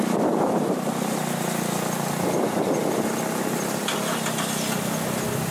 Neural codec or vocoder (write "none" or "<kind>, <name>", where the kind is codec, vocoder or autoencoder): none